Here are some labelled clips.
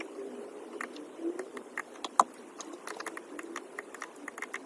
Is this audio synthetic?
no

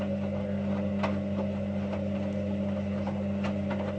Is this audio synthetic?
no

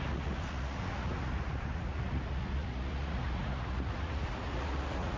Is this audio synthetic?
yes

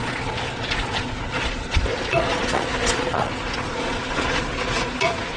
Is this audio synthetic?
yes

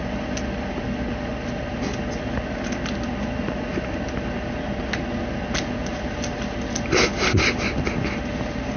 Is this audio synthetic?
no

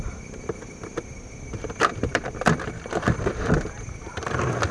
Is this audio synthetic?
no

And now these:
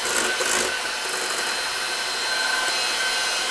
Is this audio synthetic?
no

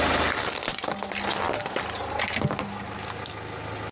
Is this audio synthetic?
no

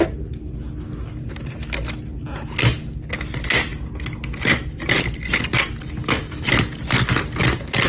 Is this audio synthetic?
no